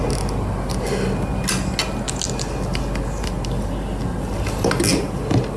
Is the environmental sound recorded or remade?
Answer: recorded